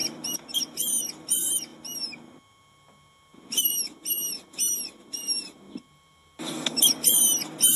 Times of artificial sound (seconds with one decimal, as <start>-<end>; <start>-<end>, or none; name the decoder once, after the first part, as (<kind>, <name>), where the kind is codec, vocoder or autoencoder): none